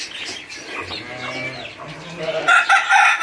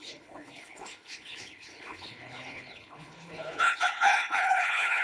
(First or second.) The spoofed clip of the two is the second